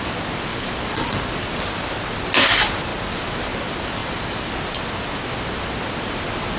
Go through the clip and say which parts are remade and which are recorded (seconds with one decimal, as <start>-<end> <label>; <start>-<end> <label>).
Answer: 0.0-0.5 recorded; 0.5-1.2 remade; 1.2-4.0 recorded; 4.0-4.5 remade; 4.5-6.6 recorded